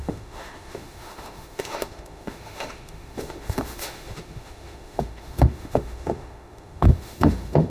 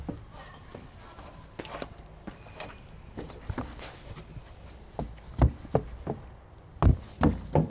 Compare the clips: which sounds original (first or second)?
second